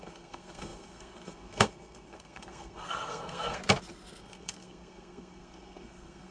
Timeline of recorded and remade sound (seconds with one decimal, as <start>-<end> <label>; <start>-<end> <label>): 0.0-3.6 remade; 3.6-4.2 recorded; 4.2-6.3 remade